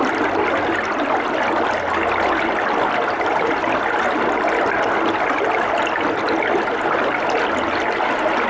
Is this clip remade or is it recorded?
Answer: recorded